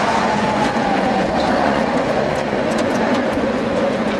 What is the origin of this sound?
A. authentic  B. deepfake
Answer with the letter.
B